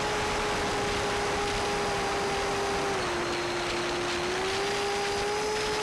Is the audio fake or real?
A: real